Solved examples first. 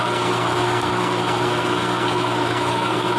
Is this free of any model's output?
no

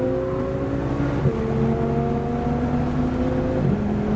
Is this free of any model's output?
yes